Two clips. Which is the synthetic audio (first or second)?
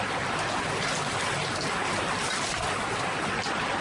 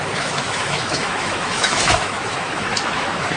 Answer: second